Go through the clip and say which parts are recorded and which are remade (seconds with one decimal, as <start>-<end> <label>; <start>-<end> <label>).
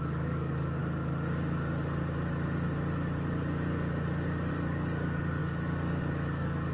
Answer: 0.0-0.8 remade; 0.8-4.5 recorded; 4.5-6.7 remade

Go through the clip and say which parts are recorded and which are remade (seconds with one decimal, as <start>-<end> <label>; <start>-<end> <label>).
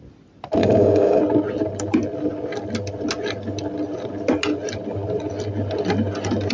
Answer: 0.0-0.6 recorded; 0.6-1.2 remade; 1.2-6.5 recorded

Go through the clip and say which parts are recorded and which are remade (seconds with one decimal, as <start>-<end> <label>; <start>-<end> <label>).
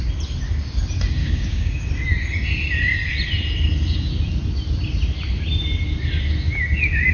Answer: 0.0-1.2 recorded; 1.2-1.9 remade; 1.9-7.1 recorded